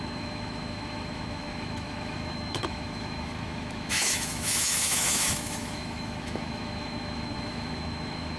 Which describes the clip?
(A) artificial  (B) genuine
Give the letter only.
A